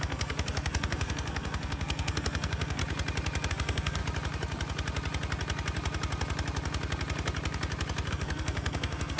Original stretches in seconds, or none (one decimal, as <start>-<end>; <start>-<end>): 2.8-3.5; 4.0-8.1